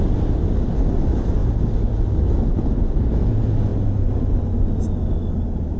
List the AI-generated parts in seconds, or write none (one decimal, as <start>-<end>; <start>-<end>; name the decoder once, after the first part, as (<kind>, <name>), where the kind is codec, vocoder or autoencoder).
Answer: none